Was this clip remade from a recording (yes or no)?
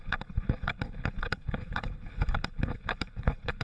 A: yes